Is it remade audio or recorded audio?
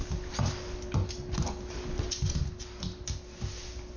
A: recorded